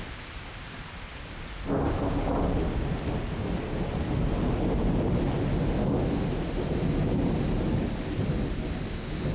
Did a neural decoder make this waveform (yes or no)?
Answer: no